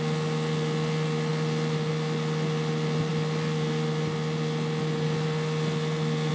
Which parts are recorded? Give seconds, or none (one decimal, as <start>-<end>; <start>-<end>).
0.0-6.3